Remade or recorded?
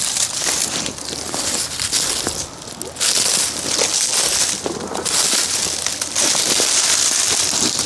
recorded